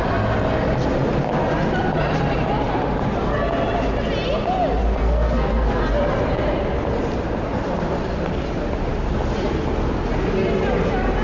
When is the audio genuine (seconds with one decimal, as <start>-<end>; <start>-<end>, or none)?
0.0-4.8; 5.8-11.2